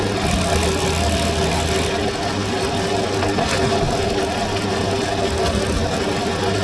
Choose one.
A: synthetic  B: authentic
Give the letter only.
B